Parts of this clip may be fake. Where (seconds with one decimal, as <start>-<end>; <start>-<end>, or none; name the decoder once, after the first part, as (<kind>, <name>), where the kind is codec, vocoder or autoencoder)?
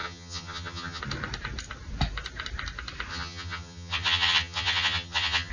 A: 0.0-1.0 (vocoder, HiFi-GAN); 3.1-5.5